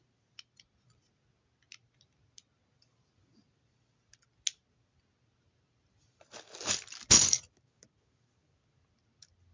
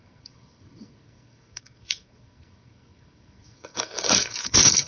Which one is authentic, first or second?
first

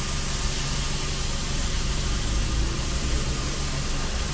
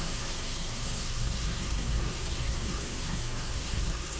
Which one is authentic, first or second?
first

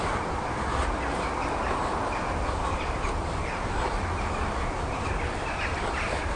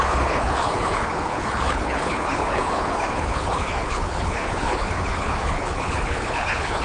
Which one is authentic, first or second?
first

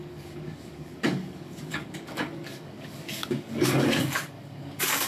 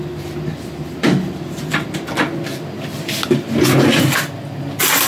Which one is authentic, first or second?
second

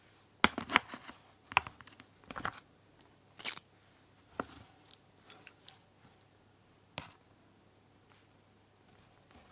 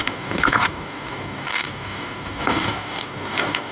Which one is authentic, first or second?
first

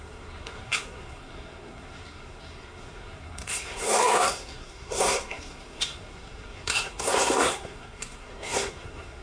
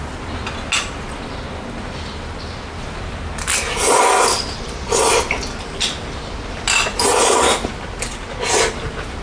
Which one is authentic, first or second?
second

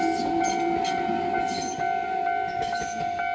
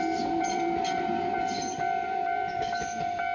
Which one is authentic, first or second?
first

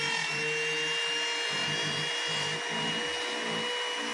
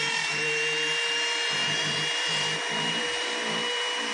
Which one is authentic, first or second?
first